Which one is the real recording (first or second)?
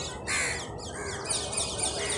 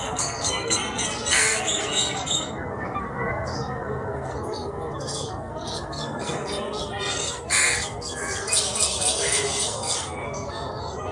first